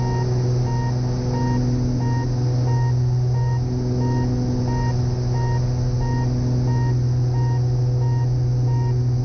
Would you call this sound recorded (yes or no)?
yes